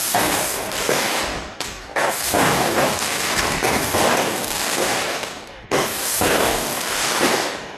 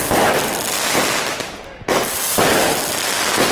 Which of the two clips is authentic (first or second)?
second